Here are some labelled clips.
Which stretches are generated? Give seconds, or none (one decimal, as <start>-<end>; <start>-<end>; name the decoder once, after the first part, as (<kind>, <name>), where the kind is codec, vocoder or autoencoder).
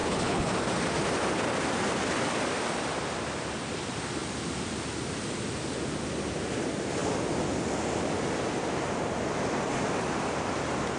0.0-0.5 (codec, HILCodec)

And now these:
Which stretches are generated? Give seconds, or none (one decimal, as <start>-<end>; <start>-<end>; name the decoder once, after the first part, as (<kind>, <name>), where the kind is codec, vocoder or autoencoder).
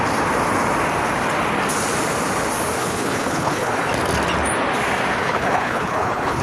2.8-3.7 (codec, HILCodec); 5.2-6.4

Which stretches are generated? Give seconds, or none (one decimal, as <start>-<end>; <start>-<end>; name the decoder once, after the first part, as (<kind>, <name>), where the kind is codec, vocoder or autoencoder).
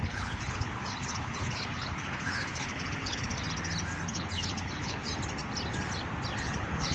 0.0-3.3 (codec, HILCodec); 4.1-5.1; 6.4-6.9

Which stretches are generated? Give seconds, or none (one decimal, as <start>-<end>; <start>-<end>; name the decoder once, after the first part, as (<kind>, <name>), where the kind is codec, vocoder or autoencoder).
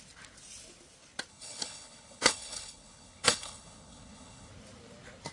1.3-4.5 (codec, HILCodec)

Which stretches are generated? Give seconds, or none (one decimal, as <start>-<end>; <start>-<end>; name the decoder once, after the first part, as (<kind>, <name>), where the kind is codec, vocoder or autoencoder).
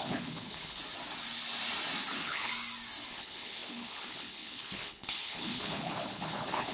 0.0-0.8 (codec, HILCodec); 2.1-2.5; 3.1-6.7